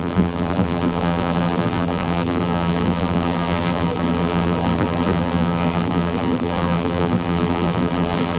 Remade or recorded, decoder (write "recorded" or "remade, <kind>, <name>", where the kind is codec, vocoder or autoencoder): remade, vocoder, BigVGAN v2